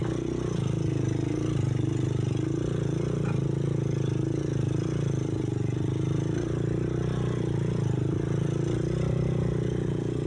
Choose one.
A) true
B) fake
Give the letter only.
A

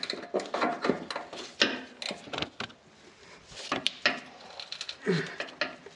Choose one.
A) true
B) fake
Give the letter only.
A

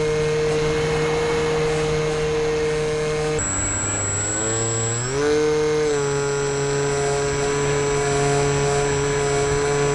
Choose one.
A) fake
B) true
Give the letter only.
B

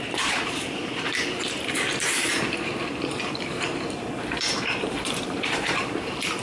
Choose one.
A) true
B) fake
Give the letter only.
B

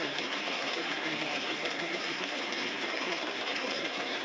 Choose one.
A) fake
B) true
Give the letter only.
A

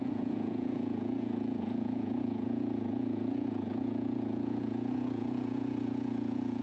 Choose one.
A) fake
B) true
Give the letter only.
A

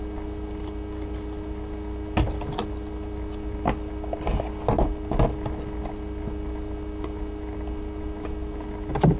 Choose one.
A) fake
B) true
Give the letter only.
B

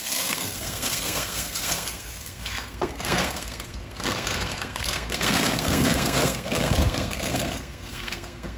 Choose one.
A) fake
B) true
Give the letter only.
A